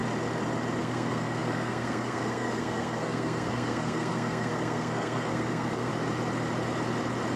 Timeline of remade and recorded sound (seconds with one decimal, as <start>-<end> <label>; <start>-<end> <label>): 0.0-0.8 recorded; 0.8-5.9 remade; 5.9-7.4 recorded